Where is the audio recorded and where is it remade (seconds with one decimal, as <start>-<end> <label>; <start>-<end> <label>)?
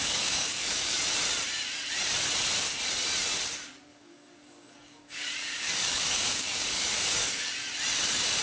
0.0-1.0 remade; 1.0-3.9 recorded; 3.9-7.5 remade; 7.5-8.4 recorded